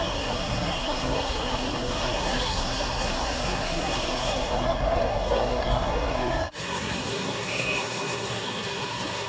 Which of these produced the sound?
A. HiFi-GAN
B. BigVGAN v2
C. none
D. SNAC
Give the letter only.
D